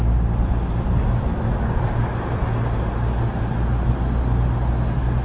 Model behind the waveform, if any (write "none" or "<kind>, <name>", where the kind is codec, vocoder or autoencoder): none